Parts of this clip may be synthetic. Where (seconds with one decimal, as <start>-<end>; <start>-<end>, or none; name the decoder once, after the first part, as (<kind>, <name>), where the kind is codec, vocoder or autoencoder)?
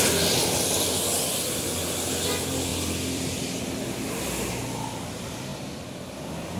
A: 2.7-3.6 (vocoder, BigVGAN v2); 5.5-6.6